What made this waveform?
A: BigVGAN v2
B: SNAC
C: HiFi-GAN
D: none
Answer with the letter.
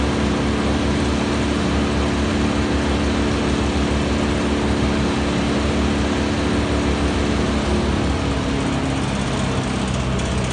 D